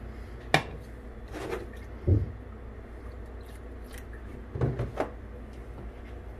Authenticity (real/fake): real